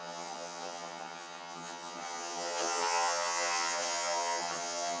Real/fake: fake